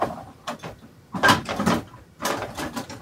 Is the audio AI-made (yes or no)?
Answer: yes